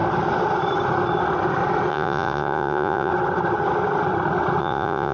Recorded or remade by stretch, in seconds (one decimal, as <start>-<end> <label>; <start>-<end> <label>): 0.0-1.9 recorded; 1.9-3.1 remade; 3.1-4.6 recorded; 4.6-5.1 remade